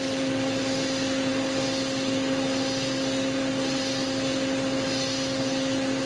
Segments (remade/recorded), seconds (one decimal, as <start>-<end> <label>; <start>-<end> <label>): 0.0-6.1 recorded